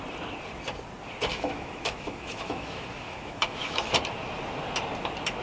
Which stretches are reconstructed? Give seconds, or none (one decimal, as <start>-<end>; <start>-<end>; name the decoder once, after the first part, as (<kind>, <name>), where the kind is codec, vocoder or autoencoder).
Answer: 1.3-3.9 (autoencoder, DAC-VAE)